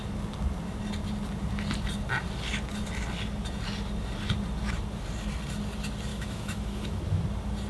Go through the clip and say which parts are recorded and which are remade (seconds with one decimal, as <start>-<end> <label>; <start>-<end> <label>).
0.0-6.1 recorded; 6.1-7.0 remade; 7.0-7.7 recorded